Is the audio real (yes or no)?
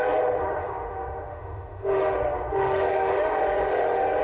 no